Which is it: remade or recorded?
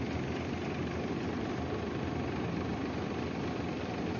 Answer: recorded